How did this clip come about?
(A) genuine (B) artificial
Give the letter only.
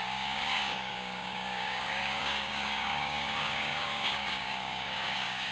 B